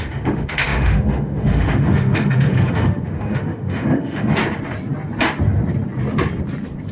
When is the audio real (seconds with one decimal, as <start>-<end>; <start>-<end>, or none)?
4.4-6.9